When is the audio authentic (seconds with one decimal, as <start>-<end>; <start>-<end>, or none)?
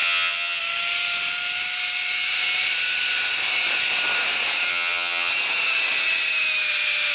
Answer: 0.6-4.7; 5.3-7.1